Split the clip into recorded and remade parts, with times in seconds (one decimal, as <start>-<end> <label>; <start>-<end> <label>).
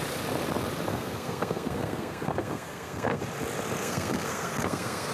0.0-0.9 recorded; 0.9-3.2 remade; 3.2-3.8 recorded; 3.8-5.1 remade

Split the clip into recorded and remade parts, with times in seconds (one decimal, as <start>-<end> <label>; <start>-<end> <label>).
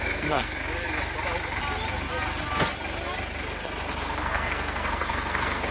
0.0-0.6 remade; 0.6-4.0 recorded; 4.0-5.7 remade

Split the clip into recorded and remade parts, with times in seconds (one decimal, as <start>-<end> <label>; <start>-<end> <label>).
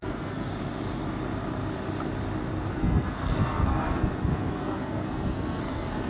0.0-0.5 remade; 0.5-2.7 recorded; 2.7-6.1 remade